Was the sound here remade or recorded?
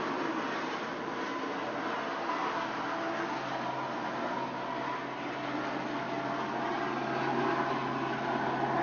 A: recorded